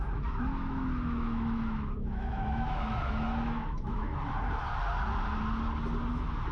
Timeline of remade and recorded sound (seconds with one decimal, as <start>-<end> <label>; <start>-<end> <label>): 0.0-4.1 remade; 4.1-6.1 recorded; 6.1-6.5 remade